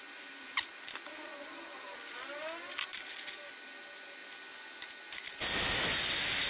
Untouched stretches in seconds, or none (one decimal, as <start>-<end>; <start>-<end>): 0.0-6.5